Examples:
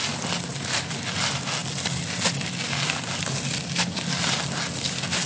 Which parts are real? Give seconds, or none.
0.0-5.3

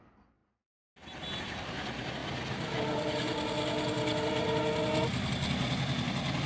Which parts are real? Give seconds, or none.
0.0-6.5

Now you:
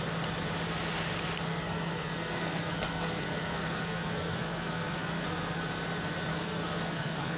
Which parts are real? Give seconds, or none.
0.0-1.5; 5.6-6.3